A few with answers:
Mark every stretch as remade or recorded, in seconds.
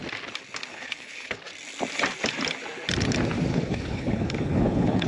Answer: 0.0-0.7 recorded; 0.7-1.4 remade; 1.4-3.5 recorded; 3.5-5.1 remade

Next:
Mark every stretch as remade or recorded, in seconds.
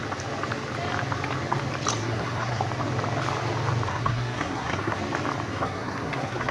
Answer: 0.0-2.0 recorded; 2.0-2.6 remade; 2.6-3.9 recorded; 3.9-5.0 remade; 5.0-5.5 recorded; 5.5-6.5 remade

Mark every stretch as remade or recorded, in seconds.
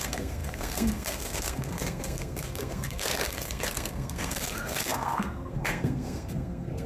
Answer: 0.0-6.9 remade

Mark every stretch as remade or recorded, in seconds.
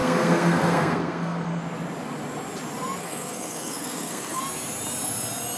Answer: 0.0-1.6 remade; 1.6-3.0 recorded; 3.0-4.4 remade; 4.4-5.6 recorded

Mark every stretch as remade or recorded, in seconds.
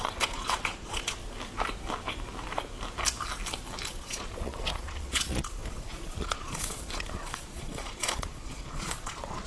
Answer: 0.0-1.2 remade; 1.2-3.9 recorded; 3.9-9.5 remade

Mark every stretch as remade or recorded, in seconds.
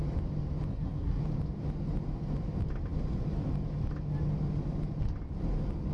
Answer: 0.0-0.7 recorded; 0.7-1.2 remade; 1.2-5.9 recorded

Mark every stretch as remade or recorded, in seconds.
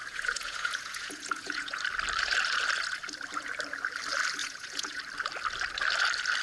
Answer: 0.0-1.8 remade; 1.8-4.4 recorded; 4.4-5.0 remade; 5.0-6.4 recorded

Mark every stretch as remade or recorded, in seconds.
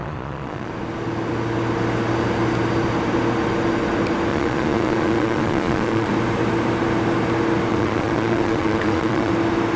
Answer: 0.0-0.7 remade; 0.7-4.3 recorded; 4.3-6.1 remade; 6.1-7.7 recorded; 7.7-9.3 remade; 9.3-9.8 recorded